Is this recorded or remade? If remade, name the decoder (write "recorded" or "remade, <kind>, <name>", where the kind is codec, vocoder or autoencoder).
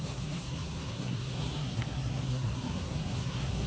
remade, codec, SNAC